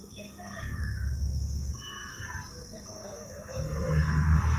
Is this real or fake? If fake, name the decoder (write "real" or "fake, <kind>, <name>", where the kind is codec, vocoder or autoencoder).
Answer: fake, codec, SNAC